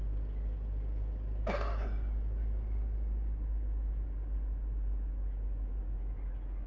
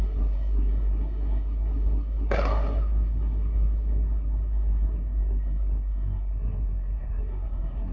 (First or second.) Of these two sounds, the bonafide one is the first